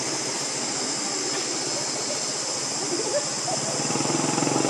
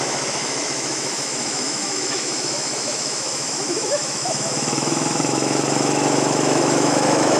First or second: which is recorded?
first